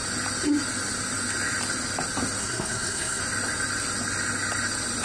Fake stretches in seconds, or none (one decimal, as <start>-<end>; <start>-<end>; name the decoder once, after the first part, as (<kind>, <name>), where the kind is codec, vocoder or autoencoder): 2.4-3.2 (codec, SNAC)